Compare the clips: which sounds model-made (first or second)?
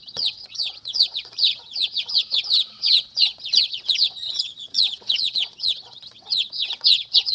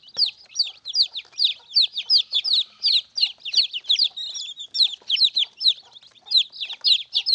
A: first